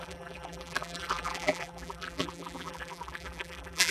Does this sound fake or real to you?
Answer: fake